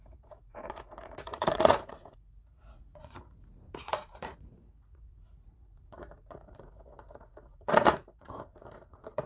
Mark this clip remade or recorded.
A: remade